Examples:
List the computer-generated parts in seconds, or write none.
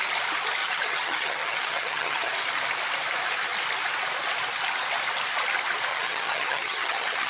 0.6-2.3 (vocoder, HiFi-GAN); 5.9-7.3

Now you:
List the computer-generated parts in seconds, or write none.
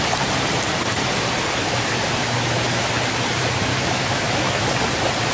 2.2-2.8 (autoencoder, DAC-VAE); 3.7-4.6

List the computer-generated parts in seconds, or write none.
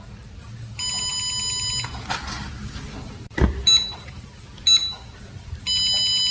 none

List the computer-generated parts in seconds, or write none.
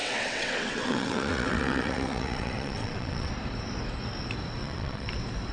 0.0-3.3 (vocoder, WaveNeXt); 4.6-5.1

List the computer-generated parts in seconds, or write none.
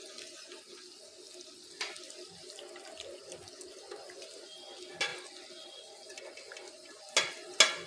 none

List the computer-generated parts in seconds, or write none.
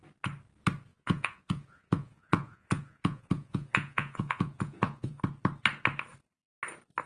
0.9-5.2 (vocoder, Vocos)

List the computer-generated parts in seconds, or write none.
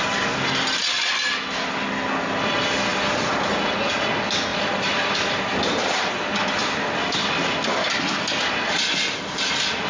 4.5-6.1 (vocoder, BigVGAN v2); 6.6-7.3